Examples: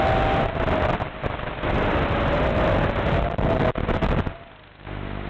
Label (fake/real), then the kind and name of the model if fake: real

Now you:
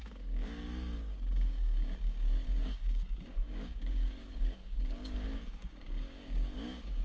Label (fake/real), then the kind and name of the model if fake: fake, codec, DAC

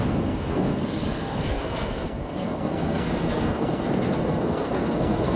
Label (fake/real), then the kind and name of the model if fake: fake, codec, SNAC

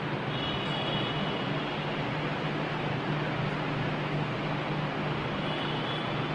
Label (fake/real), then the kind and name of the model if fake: real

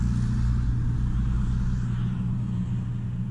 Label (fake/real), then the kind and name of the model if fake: real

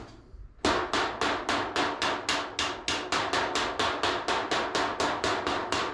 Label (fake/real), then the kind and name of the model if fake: real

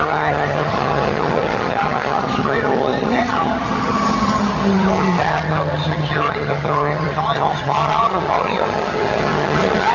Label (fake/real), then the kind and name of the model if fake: fake, vocoder, HiFi-GAN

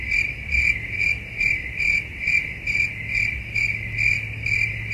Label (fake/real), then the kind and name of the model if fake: real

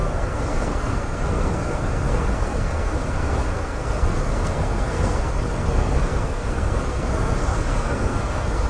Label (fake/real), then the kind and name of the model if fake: fake, codec, SNAC